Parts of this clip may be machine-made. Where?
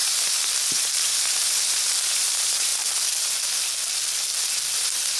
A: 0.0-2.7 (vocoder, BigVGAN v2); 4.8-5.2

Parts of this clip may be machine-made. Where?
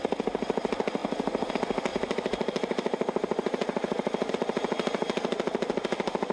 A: 1.9-4.3 (vocoder, BigVGAN v2)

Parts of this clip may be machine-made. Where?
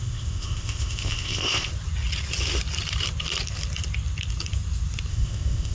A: 0.0-1.7 (codec, ZipCodec); 5.1-5.7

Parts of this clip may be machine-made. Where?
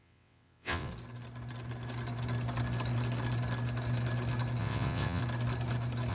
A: 0.0-0.9 (vocoder, WaveNeXt); 4.6-5.2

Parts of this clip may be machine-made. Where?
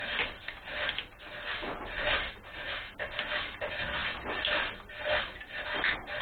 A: none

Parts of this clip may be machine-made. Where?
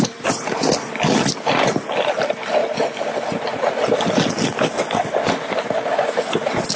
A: none